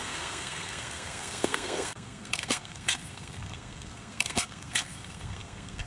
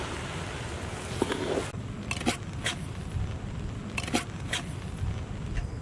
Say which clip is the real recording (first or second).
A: second